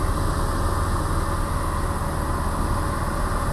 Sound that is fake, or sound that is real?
real